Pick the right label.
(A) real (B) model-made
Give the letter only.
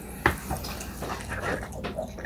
A